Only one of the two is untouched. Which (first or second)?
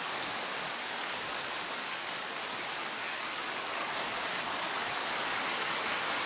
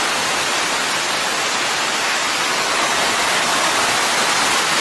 second